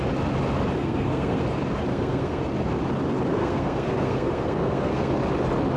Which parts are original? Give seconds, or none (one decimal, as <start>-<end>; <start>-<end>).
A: 0.0-0.8; 1.4-1.9; 2.4-3.4; 5.1-5.8